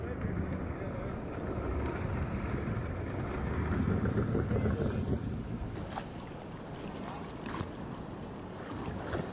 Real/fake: real